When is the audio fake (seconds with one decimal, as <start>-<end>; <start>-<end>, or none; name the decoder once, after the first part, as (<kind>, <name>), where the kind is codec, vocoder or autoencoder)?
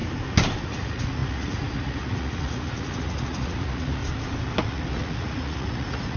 0.6-4.0 (vocoder, Vocos); 4.6-6.2